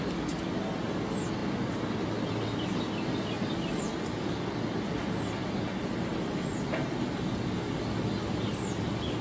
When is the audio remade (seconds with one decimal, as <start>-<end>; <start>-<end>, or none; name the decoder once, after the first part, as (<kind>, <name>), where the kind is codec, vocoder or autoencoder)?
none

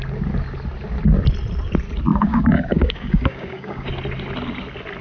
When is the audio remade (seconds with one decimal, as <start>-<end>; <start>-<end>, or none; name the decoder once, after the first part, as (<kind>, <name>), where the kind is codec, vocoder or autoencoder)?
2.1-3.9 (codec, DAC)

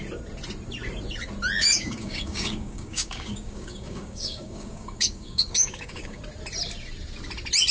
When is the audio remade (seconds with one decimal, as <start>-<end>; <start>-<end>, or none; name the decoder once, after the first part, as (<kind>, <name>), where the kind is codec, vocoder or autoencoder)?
1.6-6.2 (codec, DAC)